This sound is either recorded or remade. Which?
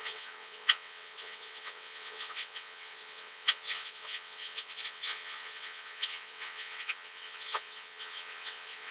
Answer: remade